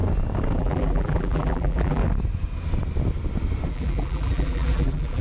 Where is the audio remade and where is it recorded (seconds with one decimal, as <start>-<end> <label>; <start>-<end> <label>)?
0.0-0.6 recorded; 0.6-2.0 remade; 2.0-3.7 recorded; 3.7-5.2 remade